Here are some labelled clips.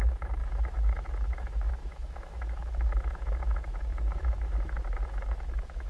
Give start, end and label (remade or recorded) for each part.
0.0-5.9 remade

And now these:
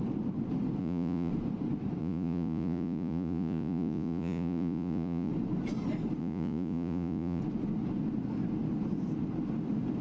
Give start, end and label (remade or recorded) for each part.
0.0-0.8 recorded; 0.8-1.3 remade; 1.3-2.0 recorded; 2.0-5.3 remade; 5.3-6.2 recorded; 6.2-7.4 remade; 7.4-10.0 recorded

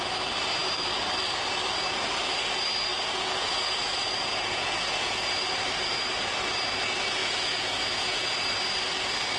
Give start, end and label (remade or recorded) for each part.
0.0-2.9 recorded; 2.9-5.5 remade; 5.5-7.2 recorded; 7.2-8.4 remade; 8.4-9.4 recorded

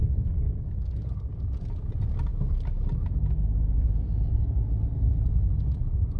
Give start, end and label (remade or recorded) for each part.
0.0-6.2 recorded